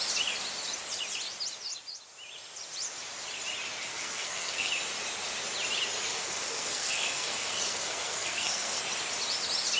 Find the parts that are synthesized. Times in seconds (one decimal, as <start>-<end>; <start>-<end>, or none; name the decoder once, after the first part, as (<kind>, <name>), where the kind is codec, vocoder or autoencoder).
3.9-4.7 (codec, SNAC); 6.1-8.8